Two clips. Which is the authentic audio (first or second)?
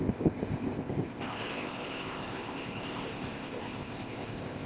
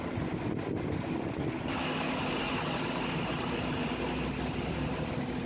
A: second